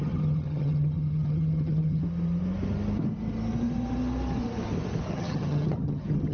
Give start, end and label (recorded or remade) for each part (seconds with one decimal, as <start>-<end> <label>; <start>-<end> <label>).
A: 0.0-2.0 remade; 2.0-5.1 recorded; 5.1-6.3 remade